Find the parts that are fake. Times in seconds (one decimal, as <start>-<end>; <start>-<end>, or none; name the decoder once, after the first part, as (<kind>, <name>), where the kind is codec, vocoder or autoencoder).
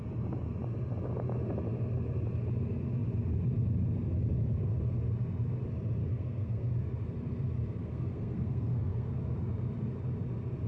6.0-6.7 (codec, SNAC); 7.8-9.1